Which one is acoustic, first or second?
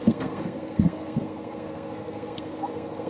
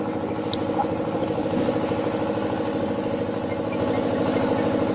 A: second